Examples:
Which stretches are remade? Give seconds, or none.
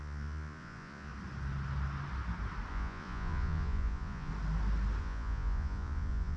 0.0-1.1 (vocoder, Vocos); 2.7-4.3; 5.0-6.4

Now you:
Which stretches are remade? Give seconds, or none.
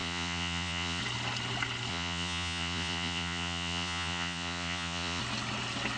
0.0-1.0 (vocoder, Vocos); 1.9-5.2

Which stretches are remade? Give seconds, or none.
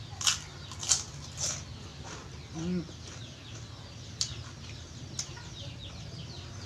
none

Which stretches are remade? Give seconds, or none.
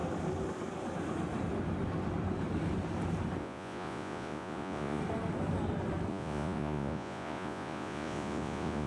3.4-5.0 (vocoder, Vocos); 6.1-8.9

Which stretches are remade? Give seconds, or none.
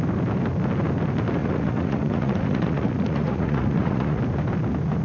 1.4-4.2 (vocoder, Vocos)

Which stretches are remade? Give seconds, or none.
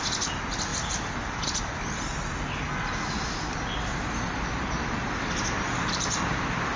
none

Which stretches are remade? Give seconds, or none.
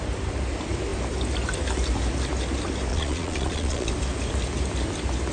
2.9-3.9 (vocoder, Vocos)